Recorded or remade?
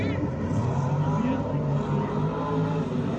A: recorded